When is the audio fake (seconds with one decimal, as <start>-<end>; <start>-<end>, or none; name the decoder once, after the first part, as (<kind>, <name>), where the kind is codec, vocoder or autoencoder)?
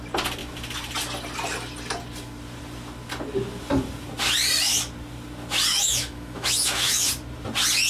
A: 5.7-7.1 (autoencoder, DAC-VAE)